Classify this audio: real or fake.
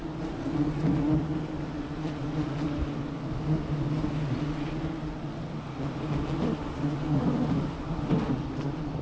real